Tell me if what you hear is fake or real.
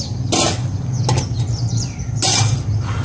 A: real